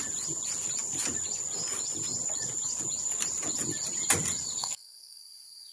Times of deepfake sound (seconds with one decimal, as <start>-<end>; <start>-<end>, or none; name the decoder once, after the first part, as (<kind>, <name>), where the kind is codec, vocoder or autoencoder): 4.6-5.2 (codec, SNAC)